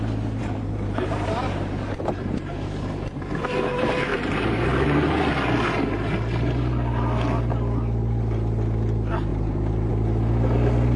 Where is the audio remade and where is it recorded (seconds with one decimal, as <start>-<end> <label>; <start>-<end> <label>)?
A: 0.0-0.4 recorded; 0.4-1.9 remade; 1.9-4.1 recorded; 4.1-5.2 remade; 5.2-9.3 recorded; 9.3-9.9 remade; 9.9-11.0 recorded